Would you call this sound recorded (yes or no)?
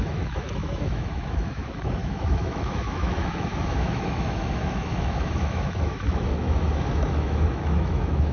no